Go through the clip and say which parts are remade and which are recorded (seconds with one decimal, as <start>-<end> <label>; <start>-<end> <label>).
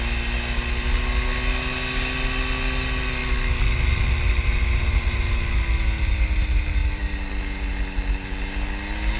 0.0-6.8 recorded; 6.8-7.4 remade; 7.4-9.2 recorded